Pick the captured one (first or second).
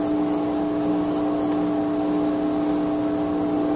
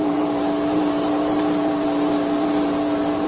first